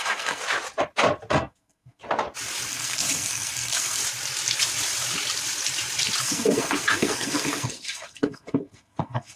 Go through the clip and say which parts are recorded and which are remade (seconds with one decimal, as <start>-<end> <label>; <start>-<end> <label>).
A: 0.0-0.4 remade; 0.4-1.3 recorded; 1.3-2.0 remade; 2.0-2.7 recorded; 2.7-4.0 remade; 4.0-6.2 recorded; 6.2-9.4 remade

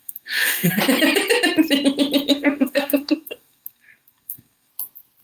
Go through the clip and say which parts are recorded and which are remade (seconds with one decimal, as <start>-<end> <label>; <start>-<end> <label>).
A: 0.0-0.8 remade; 0.8-2.3 recorded; 2.3-4.7 remade; 4.7-5.2 recorded

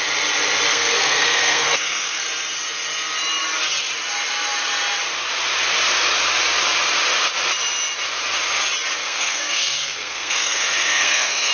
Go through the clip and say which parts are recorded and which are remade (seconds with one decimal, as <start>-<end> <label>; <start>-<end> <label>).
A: 0.0-0.7 recorded; 0.7-2.2 remade; 2.2-9.0 recorded; 9.0-11.5 remade

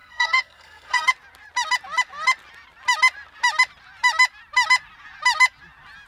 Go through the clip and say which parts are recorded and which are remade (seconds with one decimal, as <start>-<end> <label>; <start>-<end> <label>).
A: 0.0-1.1 remade; 1.1-6.1 recorded

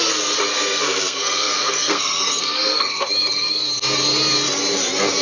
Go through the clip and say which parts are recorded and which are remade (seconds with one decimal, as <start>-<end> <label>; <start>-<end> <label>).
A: 0.0-0.5 recorded; 0.5-3.1 remade; 3.1-5.2 recorded

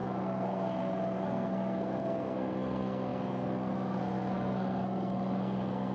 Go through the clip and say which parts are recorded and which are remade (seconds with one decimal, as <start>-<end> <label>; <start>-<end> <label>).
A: 0.0-5.9 remade

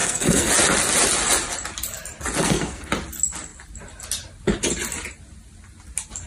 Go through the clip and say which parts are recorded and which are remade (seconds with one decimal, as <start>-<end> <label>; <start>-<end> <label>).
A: 0.0-0.5 remade; 0.5-2.4 recorded; 2.4-2.9 remade; 2.9-6.3 recorded